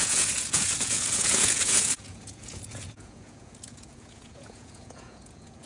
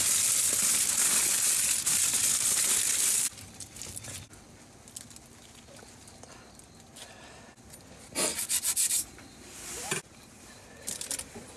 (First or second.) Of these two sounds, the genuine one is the second